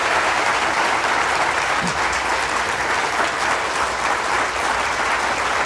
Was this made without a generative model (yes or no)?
yes